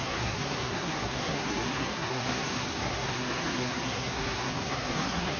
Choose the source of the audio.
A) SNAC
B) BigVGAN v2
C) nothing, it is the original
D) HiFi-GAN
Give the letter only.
A